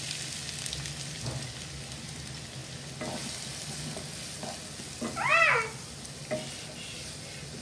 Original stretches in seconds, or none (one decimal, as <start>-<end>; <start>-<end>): 0.0-7.6